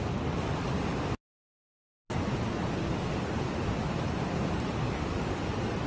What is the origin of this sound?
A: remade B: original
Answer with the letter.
B